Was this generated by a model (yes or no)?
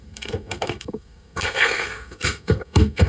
yes